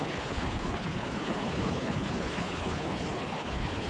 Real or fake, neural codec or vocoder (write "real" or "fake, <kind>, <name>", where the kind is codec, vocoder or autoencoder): fake, codec, HILCodec